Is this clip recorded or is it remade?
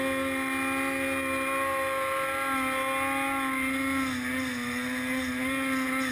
recorded